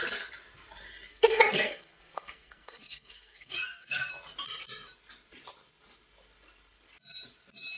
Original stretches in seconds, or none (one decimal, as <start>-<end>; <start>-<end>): 0.0-1.1; 4.1-7.8